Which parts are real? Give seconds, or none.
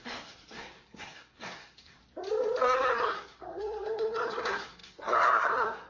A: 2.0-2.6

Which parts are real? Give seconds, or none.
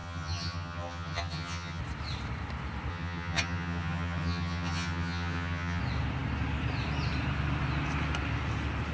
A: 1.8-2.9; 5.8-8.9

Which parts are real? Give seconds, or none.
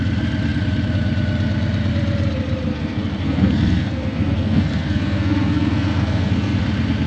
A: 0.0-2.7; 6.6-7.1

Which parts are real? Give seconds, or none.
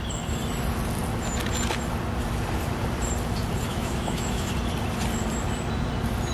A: 0.0-3.7; 4.5-6.3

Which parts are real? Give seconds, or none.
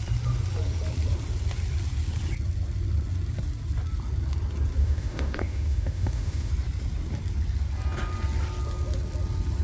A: 0.0-4.8; 6.5-9.6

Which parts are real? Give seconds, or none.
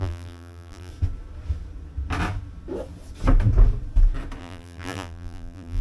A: 0.9-4.4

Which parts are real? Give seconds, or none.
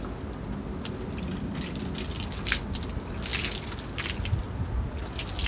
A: 0.0-5.5